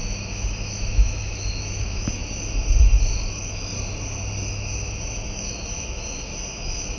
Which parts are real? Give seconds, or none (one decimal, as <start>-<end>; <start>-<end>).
2.2-3.3; 3.7-4.5